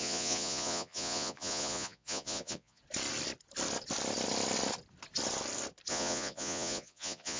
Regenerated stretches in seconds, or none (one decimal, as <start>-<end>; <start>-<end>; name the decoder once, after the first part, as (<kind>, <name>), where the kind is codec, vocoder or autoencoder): 0.0-2.8 (vocoder, Vocos); 5.9-7.4